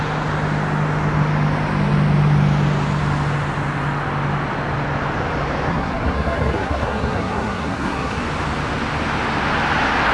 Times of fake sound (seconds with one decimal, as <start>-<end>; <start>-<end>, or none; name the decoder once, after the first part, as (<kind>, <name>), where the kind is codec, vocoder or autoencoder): 5.7-8.2 (codec, SNAC)